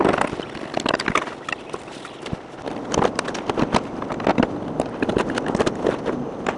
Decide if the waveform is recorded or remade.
recorded